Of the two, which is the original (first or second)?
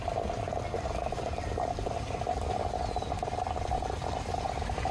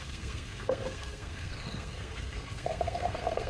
first